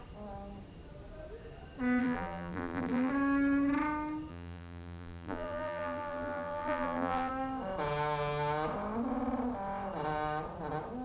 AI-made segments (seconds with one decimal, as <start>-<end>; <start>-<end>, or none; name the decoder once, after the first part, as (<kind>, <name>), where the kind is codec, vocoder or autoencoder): 2.0-3.1 (vocoder, BigVGAN v2); 4.3-7.3